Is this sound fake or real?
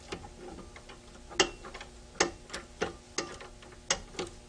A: real